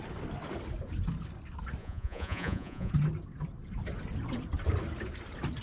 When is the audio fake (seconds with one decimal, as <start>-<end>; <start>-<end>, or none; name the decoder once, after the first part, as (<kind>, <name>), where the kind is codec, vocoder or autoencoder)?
1.8-2.9 (vocoder, Vocos)